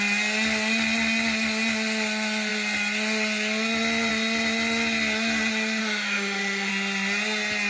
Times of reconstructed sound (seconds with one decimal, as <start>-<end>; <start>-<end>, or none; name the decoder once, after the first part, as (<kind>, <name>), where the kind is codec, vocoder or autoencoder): 5.8-6.7 (autoencoder, DAC-VAE)